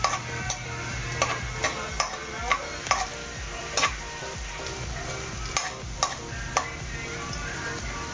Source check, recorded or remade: recorded